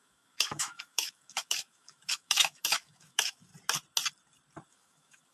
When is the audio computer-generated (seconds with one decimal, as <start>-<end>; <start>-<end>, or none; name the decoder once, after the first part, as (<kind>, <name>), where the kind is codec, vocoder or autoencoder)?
0.0-3.5 (autoencoder, DAC-VAE); 4.7-5.3

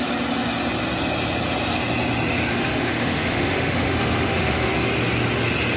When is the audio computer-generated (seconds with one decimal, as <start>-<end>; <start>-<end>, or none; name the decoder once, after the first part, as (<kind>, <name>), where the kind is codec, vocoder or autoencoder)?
2.5-4.7 (autoencoder, DAC-VAE)

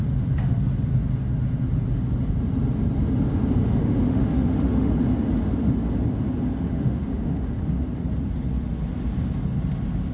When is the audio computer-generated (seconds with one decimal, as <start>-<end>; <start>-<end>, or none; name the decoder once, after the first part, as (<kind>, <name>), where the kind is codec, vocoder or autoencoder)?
3.6-4.9 (autoencoder, DAC-VAE); 6.7-7.6

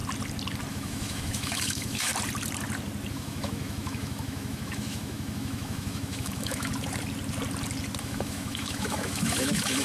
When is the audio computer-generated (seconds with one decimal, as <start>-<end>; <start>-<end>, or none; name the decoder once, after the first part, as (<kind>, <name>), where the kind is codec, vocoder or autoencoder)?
0.7-2.1 (autoencoder, DAC-VAE); 3.1-6.7; 8.0-9.8

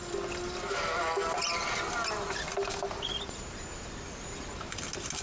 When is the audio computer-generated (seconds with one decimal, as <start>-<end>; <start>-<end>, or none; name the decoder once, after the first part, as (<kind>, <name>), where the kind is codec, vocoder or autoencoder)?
none

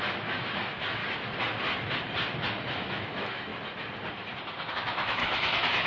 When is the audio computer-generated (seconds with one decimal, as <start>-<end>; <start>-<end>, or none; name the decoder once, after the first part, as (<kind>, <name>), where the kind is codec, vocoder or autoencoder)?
0.0-1.0 (autoencoder, DAC-VAE); 2.7-3.5; 4.7-5.9

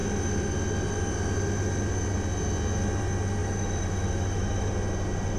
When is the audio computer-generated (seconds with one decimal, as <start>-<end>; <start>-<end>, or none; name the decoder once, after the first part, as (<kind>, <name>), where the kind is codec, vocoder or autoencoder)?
3.4-4.7 (autoencoder, DAC-VAE)